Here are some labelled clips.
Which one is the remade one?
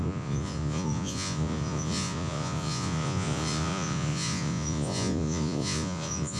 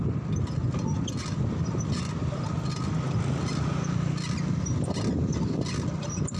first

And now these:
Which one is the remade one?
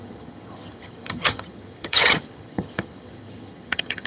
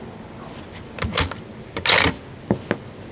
first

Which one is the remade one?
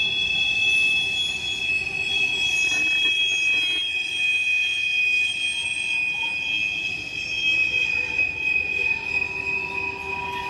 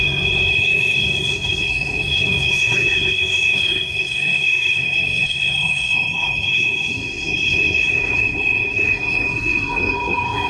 second